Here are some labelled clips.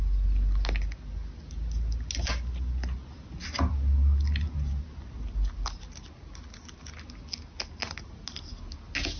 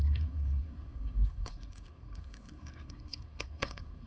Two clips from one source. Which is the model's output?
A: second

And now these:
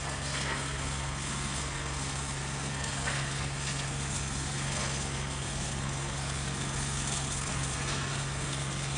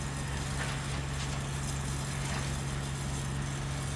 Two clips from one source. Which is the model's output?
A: first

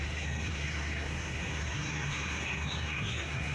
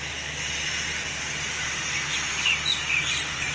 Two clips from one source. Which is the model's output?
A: first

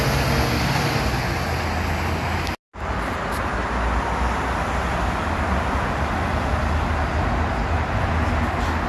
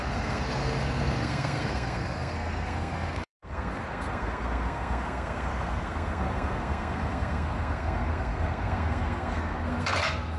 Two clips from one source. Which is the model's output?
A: second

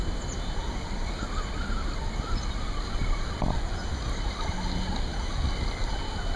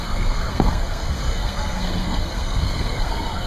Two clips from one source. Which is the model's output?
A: second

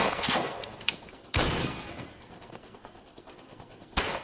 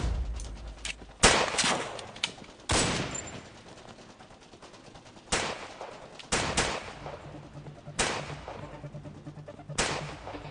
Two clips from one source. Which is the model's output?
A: first